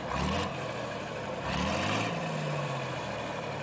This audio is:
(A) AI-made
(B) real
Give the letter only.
A